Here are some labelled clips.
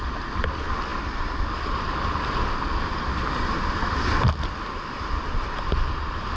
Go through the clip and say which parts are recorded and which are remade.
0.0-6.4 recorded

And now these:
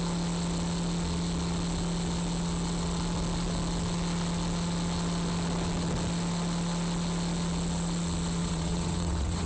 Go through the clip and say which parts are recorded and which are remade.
0.0-8.4 recorded; 8.4-9.5 remade